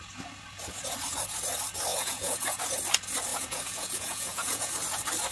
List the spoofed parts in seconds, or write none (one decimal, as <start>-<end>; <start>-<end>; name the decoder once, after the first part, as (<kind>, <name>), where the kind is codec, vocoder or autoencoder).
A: 1.9-2.6 (vocoder, Vocos); 3.3-4.7